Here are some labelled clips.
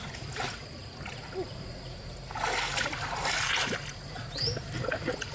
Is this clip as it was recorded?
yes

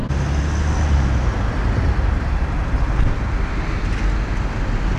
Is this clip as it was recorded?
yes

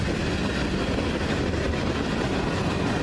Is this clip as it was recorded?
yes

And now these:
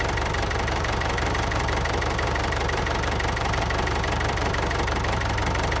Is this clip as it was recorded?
no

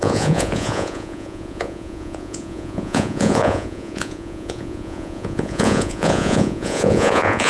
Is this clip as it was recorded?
no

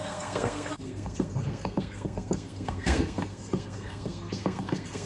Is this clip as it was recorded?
no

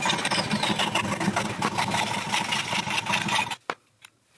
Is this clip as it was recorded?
yes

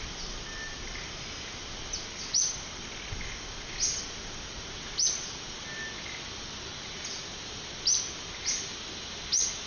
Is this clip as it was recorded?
yes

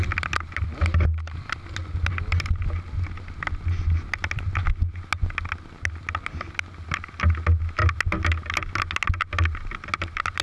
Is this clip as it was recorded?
yes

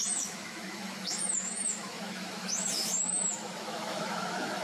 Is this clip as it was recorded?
no